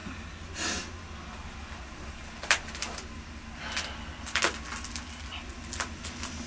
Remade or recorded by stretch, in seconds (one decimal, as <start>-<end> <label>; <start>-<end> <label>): 0.0-6.5 recorded